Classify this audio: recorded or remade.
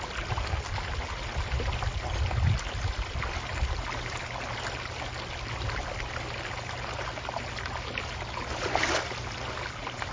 recorded